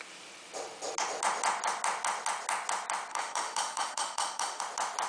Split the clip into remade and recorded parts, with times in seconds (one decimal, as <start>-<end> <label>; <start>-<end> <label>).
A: 0.0-3.1 recorded; 3.1-4.6 remade; 4.6-5.1 recorded

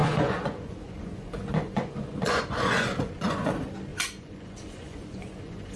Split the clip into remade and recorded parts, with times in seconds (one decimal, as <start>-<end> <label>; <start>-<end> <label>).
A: 0.0-3.5 remade; 3.5-3.9 recorded; 3.9-5.8 remade

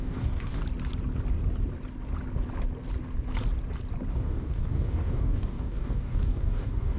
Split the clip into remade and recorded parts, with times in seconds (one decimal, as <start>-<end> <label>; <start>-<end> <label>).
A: 0.0-0.6 remade; 0.6-4.1 recorded; 4.1-7.0 remade

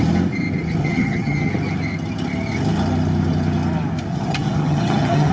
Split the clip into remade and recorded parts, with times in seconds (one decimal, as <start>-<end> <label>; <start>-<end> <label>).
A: 0.0-0.8 recorded; 0.8-1.5 remade; 1.5-4.1 recorded; 4.1-5.3 remade

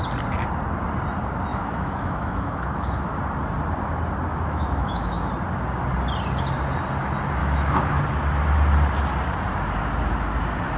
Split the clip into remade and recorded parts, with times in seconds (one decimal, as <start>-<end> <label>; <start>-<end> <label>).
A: 0.0-1.5 recorded; 1.5-3.2 remade; 3.2-4.3 recorded; 4.3-5.3 remade; 5.3-7.4 recorded; 7.4-8.0 remade; 8.0-10.8 recorded

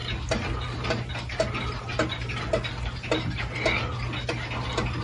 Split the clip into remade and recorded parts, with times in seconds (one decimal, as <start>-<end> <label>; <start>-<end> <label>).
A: 0.0-5.0 recorded